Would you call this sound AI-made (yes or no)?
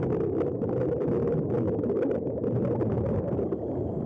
yes